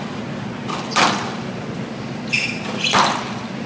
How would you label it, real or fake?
real